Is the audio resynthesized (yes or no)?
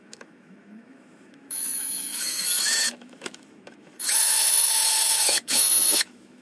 yes